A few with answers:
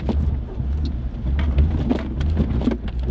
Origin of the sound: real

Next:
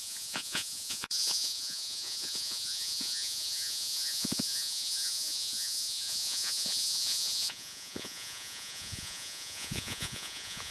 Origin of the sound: fake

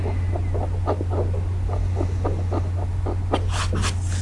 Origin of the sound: real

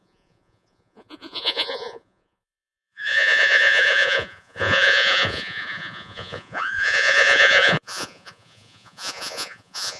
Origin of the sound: fake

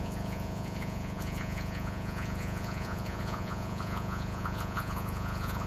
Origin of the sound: fake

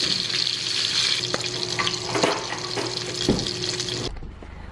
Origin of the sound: real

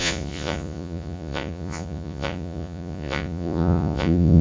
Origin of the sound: fake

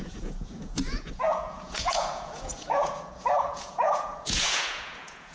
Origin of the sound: fake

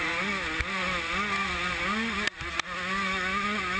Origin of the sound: real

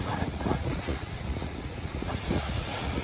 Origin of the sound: fake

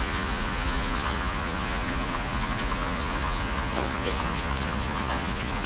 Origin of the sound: fake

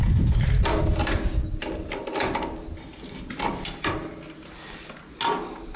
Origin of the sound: real